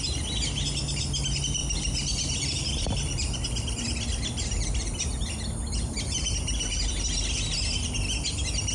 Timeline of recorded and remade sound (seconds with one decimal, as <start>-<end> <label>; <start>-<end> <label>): 0.0-1.6 recorded; 1.6-6.3 remade; 6.3-8.7 recorded